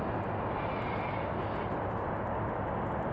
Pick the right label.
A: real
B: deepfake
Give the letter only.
A